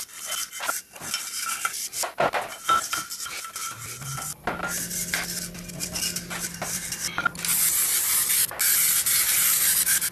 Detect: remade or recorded recorded